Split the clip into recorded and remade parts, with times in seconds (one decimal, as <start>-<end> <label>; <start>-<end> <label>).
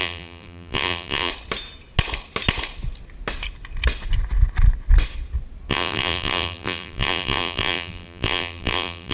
0.0-1.3 remade; 1.3-5.7 recorded; 5.7-9.1 remade